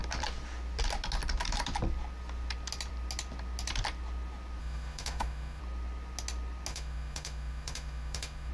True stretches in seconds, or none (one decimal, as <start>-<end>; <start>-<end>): 0.0-4.6; 5.6-6.7